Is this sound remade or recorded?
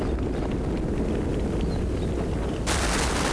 recorded